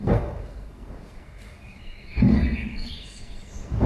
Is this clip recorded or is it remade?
remade